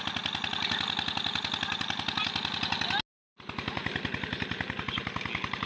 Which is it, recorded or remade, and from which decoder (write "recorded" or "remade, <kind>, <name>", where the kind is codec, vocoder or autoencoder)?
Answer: recorded